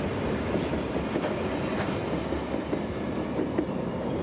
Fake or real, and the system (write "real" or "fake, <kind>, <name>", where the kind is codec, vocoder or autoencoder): real